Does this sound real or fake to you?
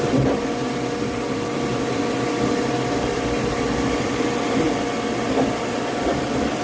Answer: real